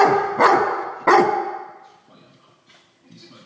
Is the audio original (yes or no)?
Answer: yes